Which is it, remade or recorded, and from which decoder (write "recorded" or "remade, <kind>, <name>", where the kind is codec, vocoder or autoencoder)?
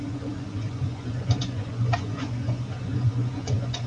remade, vocoder, Vocos